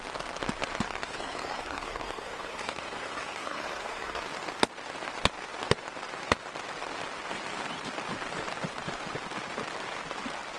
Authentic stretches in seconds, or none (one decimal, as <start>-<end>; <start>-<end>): 0.0-0.9; 4.2-10.6